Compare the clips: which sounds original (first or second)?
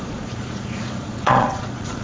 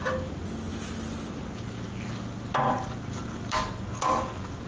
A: second